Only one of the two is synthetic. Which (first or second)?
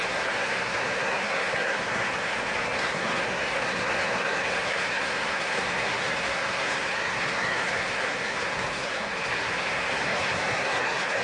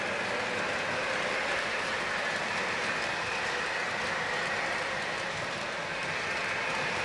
first